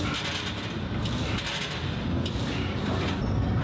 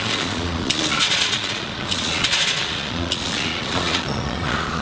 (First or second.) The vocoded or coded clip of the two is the second